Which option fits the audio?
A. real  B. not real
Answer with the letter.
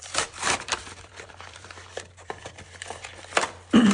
B